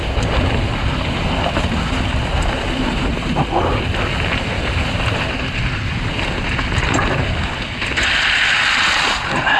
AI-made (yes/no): no